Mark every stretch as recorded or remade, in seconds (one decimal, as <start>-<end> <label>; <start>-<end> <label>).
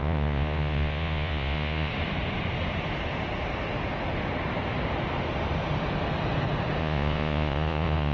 0.0-1.9 remade; 1.9-6.8 recorded; 6.8-8.1 remade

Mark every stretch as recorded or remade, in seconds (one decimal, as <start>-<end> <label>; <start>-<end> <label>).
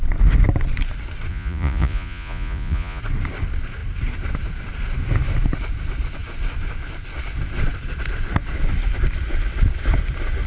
0.0-1.3 recorded; 1.3-3.0 remade; 3.0-10.5 recorded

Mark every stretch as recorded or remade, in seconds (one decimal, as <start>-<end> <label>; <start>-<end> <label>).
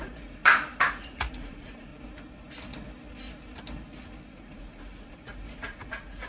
0.0-0.4 remade; 0.4-0.9 recorded; 0.9-1.9 remade; 1.9-4.3 recorded; 4.3-6.3 remade